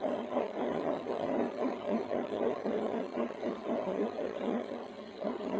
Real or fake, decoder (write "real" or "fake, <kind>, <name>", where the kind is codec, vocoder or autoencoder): fake, vocoder, HiFi-GAN